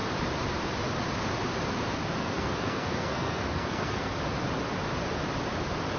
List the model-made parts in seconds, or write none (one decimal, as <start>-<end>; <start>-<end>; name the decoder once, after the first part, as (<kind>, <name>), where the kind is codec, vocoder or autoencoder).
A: 2.2-4.1 (codec, SNAC)